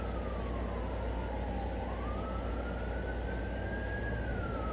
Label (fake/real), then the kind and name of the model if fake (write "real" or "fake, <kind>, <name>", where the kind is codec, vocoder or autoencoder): real